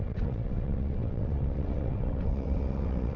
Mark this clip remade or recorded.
remade